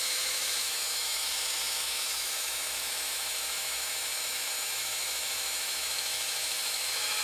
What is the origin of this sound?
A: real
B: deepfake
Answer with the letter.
B